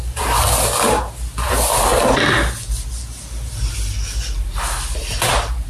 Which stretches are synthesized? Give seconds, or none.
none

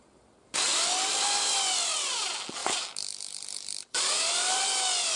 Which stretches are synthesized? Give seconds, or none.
none

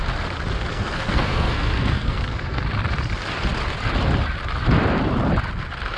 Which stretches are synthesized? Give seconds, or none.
0.7-2.6 (codec, SNAC)

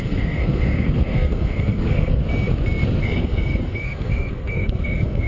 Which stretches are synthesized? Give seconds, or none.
0.0-2.2 (codec, SNAC); 3.0-5.3